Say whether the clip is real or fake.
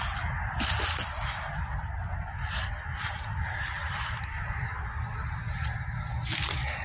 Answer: real